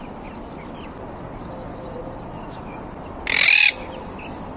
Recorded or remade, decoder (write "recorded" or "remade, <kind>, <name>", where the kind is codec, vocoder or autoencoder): recorded